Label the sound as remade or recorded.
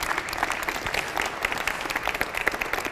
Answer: remade